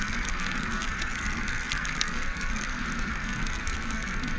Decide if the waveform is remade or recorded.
remade